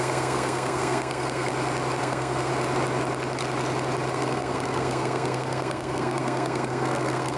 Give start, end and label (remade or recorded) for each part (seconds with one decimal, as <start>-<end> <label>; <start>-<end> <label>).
0.0-1.5 remade; 1.5-2.0 recorded; 2.0-2.5 remade; 2.5-4.1 recorded; 4.1-7.4 remade